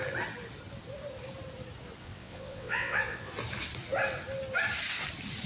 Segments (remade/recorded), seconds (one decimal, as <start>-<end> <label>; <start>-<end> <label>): 0.0-2.0 recorded; 2.0-3.3 remade; 3.3-5.5 recorded